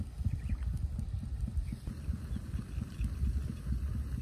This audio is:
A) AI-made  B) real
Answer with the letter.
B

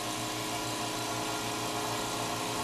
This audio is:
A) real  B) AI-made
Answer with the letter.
A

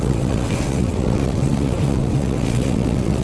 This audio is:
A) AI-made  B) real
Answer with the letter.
A